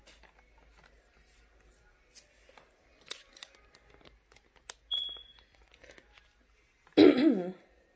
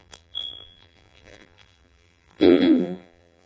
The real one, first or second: first